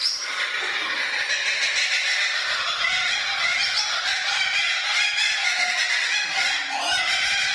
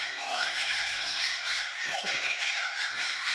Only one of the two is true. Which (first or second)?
first